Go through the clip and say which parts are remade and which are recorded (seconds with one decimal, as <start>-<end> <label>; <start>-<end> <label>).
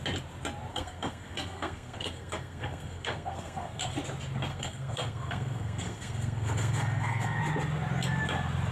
0.0-0.7 recorded; 0.7-3.8 remade; 3.8-4.5 recorded; 4.5-7.4 remade; 7.4-8.7 recorded